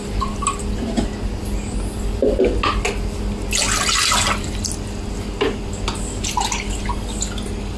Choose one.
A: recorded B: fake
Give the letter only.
A